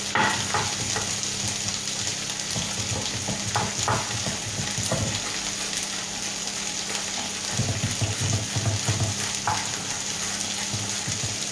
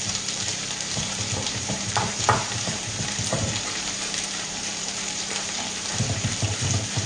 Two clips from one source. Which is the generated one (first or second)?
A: second